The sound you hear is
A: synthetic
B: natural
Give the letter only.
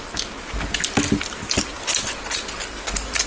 B